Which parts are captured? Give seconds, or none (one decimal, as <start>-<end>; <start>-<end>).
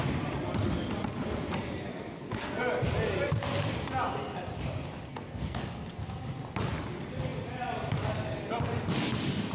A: 0.0-1.9; 2.6-5.1; 5.9-9.5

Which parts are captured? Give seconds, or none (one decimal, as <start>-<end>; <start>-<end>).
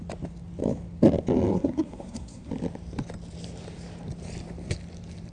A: 0.0-1.5; 2.5-5.3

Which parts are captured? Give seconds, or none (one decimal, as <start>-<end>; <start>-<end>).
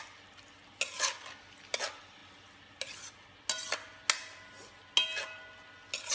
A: 0.0-6.1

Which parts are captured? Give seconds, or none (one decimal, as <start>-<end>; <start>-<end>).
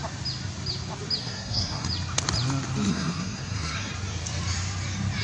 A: 0.0-1.2; 1.9-2.9; 3.9-5.2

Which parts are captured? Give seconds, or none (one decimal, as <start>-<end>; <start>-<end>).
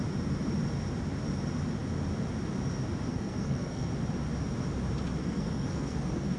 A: 0.0-3.1; 3.9-5.2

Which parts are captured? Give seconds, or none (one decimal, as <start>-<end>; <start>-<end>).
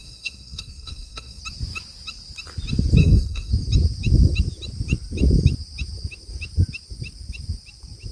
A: 1.4-3.0; 3.5-8.1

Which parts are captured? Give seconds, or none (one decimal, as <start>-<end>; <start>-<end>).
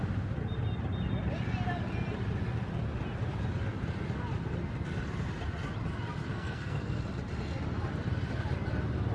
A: 0.0-6.3; 7.0-9.1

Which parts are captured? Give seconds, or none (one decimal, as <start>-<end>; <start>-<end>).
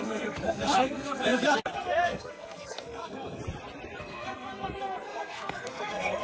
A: 3.4-4.0